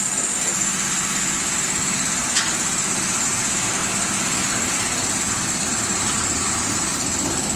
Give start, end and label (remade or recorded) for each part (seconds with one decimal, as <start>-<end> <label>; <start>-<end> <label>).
0.0-7.6 recorded